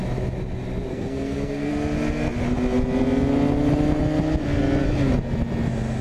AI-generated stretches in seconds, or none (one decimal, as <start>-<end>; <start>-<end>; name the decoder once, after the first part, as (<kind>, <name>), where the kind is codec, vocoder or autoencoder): 0.9-1.7 (codec, SNAC)